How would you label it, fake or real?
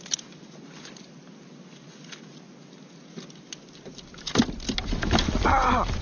real